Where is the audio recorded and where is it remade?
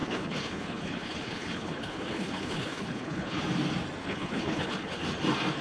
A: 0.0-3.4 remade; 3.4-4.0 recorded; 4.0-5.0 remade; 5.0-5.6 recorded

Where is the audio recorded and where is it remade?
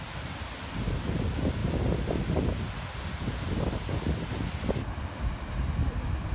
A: 0.0-6.3 recorded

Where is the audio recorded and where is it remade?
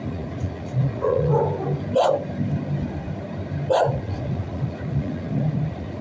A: 0.0-1.3 remade; 1.3-3.8 recorded; 3.8-6.0 remade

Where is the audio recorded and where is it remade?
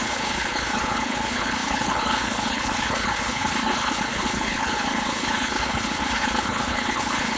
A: 0.0-7.4 remade